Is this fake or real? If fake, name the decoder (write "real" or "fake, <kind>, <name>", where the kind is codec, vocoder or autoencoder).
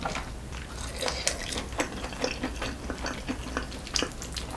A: real